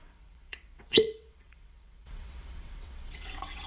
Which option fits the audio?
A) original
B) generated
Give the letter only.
B